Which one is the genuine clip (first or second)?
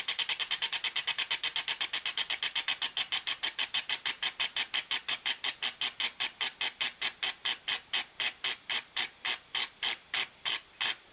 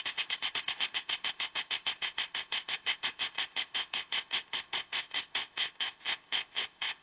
first